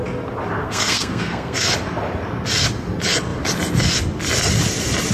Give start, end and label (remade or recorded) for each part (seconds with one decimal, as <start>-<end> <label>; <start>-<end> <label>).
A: 0.0-0.6 recorded; 0.6-1.7 remade; 1.7-5.1 recorded